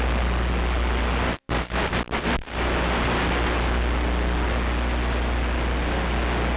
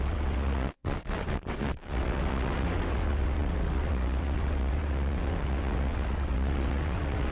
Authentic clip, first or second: first